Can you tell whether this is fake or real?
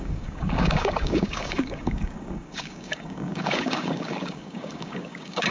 fake